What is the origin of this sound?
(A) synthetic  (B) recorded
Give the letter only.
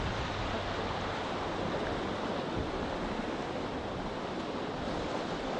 B